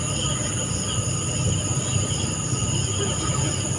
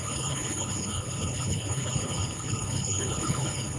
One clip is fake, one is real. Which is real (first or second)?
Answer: first